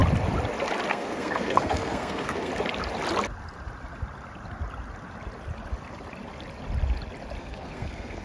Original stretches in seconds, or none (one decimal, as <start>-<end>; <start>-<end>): 0.0-0.9; 2.5-7.4